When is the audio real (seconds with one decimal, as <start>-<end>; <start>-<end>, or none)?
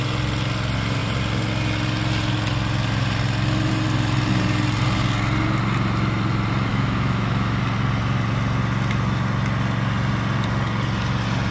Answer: 0.0-6.7; 7.6-11.5